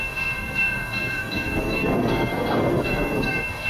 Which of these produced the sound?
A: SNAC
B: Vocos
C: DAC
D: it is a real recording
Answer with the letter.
A